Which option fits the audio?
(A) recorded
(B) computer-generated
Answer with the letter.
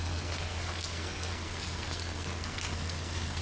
B